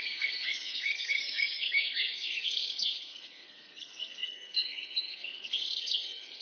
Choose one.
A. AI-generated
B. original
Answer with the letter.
A